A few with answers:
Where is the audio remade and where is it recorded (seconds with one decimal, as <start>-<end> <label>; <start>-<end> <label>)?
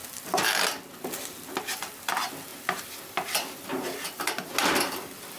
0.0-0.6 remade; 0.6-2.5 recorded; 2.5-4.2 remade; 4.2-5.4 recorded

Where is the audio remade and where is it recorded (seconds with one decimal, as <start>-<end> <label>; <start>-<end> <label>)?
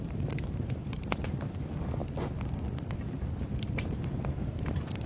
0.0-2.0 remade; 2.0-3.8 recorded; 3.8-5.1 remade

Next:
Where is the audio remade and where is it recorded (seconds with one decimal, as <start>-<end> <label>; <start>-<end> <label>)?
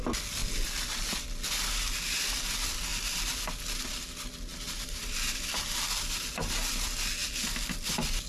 0.0-4.5 recorded; 4.5-6.7 remade; 6.7-8.3 recorded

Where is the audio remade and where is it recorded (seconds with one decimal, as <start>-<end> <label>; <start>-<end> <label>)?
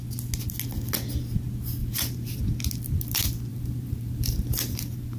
0.0-1.8 recorded; 1.8-2.4 remade; 2.4-3.5 recorded; 3.5-5.2 remade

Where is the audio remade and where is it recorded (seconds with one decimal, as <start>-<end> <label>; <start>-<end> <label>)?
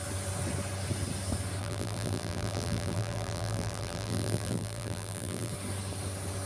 0.0-1.6 recorded; 1.6-5.5 remade; 5.5-6.5 recorded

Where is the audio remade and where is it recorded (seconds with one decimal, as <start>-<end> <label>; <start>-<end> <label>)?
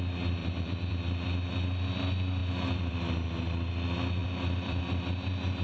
0.0-0.4 recorded; 0.4-0.9 remade; 0.9-2.4 recorded; 2.4-2.9 remade; 2.9-4.2 recorded; 4.2-4.8 remade; 4.8-5.6 recorded